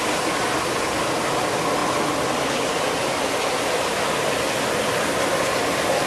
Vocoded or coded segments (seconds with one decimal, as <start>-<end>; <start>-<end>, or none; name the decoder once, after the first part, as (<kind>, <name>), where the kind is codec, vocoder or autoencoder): none